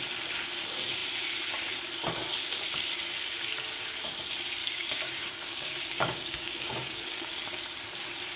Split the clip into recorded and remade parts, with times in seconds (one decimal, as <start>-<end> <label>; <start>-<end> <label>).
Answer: 0.0-4.6 recorded; 4.6-7.4 remade; 7.4-8.4 recorded